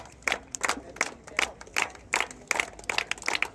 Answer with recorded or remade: recorded